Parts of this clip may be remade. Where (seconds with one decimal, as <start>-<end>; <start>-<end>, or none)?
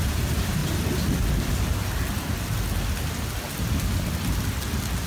0.0-0.6; 1.4-1.8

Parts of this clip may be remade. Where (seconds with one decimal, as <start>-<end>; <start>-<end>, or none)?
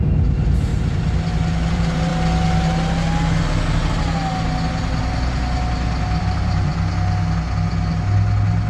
0.0-0.7; 1.7-2.1; 6.2-6.7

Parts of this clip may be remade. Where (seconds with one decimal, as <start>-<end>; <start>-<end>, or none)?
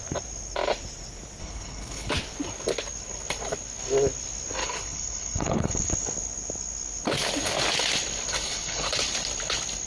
1.4-2.1; 4.6-5.9; 8.3-8.9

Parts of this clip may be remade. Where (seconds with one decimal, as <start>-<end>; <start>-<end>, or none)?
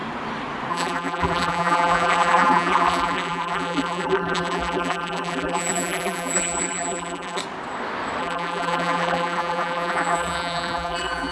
0.7-7.4; 8.2-11.3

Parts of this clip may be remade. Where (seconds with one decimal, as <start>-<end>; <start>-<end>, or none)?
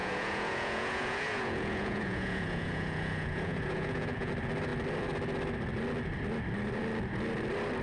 0.0-4.3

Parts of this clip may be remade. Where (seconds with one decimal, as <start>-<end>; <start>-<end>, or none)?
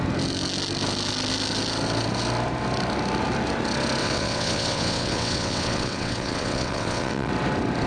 4.0-7.3